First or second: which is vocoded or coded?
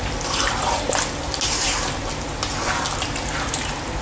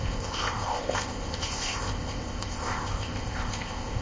second